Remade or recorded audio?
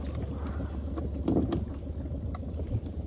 recorded